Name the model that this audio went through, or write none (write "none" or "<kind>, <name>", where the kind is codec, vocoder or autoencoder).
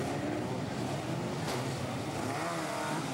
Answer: vocoder, BigVGAN v2